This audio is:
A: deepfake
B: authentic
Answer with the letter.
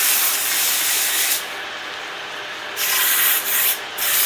A